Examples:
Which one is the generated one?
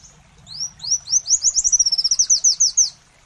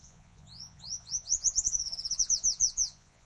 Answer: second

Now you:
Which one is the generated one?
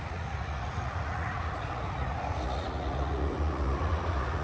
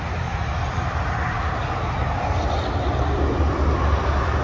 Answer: first